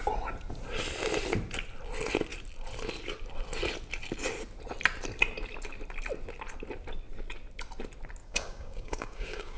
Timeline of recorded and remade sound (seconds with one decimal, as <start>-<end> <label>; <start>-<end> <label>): 0.0-8.2 recorded; 8.2-9.6 remade